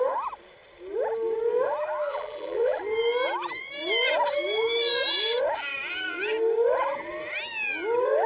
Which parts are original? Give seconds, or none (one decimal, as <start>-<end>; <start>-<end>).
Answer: 0.0-2.1; 2.8-8.3